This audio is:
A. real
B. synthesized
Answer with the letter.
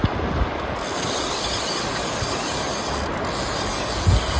A